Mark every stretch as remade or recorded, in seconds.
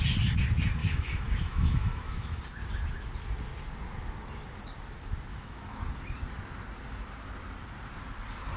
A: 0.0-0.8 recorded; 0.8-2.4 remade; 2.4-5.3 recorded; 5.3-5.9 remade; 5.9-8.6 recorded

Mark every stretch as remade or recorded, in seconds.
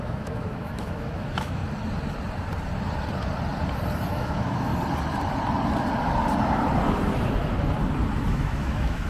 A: 0.0-1.6 remade; 1.6-4.1 recorded; 4.1-4.7 remade; 4.7-8.3 recorded; 8.3-9.1 remade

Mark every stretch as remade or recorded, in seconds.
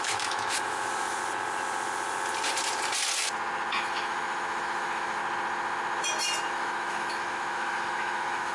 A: 0.0-1.2 remade; 1.2-3.7 recorded; 3.7-5.2 remade; 5.2-6.5 recorded; 6.5-8.5 remade